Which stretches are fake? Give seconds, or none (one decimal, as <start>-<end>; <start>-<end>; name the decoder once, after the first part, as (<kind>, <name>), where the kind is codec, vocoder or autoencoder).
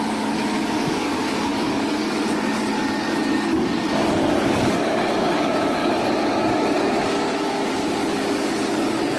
0.0-9.2 (codec, DAC)